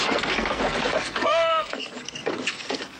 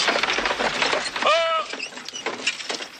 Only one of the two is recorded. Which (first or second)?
second